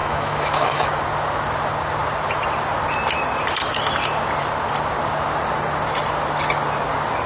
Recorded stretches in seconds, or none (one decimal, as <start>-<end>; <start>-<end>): 1.0-7.3

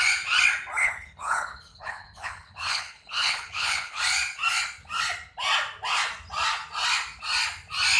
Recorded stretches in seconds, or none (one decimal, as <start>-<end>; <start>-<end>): 0.0-0.8; 4.0-8.0

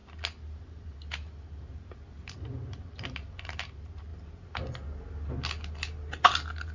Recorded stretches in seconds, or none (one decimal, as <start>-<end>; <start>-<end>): 0.0-6.7

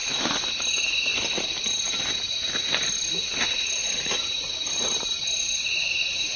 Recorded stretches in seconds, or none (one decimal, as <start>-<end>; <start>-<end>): 0.0-3.8; 4.5-5.7

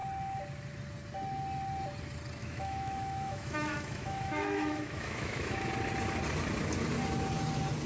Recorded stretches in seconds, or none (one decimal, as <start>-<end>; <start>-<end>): 0.0-2.4; 5.7-7.9

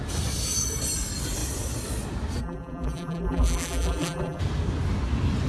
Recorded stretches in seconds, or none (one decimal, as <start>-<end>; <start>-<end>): 0.0-2.4; 4.4-5.5